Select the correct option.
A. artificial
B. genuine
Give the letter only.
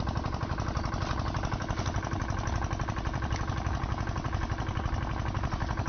B